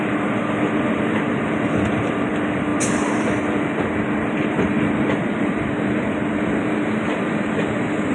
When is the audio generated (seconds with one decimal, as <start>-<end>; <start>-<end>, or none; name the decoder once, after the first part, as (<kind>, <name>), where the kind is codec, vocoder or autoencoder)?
0.0-8.1 (vocoder, BigVGAN v2)